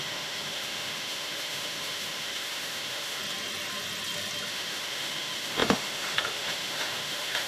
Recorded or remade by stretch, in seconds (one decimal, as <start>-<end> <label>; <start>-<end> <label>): 0.0-3.2 remade; 3.2-4.5 recorded; 4.5-7.5 remade